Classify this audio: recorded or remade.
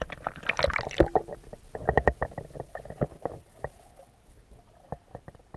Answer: recorded